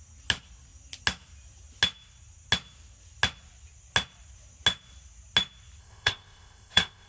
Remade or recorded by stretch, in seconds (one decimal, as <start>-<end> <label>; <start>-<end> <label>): 0.0-5.8 recorded; 5.8-7.1 remade